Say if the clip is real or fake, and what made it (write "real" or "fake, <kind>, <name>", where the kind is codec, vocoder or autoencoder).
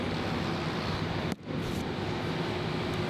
real